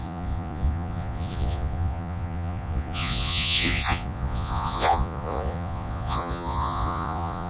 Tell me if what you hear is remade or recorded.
remade